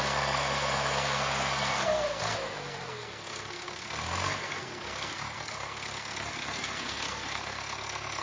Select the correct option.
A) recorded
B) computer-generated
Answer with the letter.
B